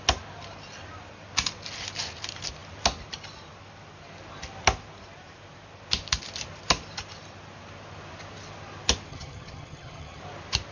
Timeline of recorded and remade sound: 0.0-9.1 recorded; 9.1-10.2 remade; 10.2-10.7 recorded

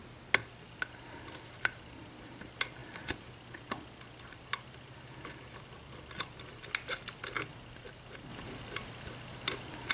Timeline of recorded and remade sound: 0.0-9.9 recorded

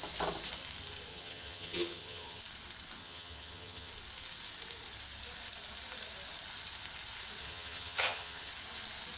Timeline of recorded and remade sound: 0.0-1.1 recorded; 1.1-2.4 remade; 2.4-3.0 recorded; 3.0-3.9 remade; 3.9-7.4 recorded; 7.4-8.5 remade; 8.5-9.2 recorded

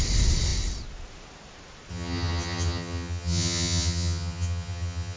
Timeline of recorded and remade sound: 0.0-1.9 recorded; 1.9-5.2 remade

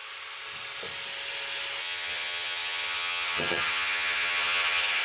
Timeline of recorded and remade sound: 0.0-1.8 recorded; 1.8-5.0 remade